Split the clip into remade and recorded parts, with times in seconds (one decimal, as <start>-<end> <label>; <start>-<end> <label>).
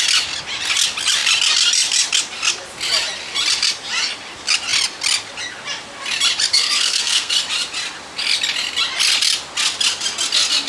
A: 0.0-6.5 recorded; 6.5-7.3 remade; 7.3-10.7 recorded